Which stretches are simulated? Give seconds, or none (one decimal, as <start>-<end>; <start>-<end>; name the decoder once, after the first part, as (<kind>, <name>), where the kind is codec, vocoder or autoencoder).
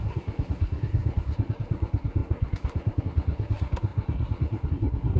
0.0-5.2 (codec, SNAC)